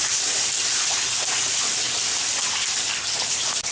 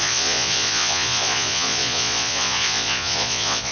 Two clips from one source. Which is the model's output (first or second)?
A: second